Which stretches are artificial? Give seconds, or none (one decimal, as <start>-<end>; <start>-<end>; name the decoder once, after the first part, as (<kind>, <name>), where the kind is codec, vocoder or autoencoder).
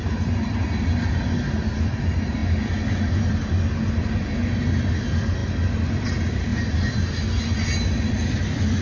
none